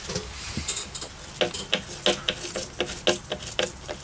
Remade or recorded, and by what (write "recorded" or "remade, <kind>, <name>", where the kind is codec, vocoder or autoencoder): recorded